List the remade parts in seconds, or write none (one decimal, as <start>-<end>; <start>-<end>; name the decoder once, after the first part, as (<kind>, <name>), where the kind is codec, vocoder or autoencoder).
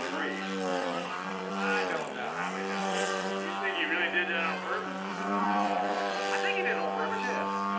0.7-1.5 (vocoder, Vocos); 2.8-3.3; 5.1-6.2